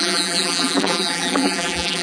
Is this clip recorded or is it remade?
remade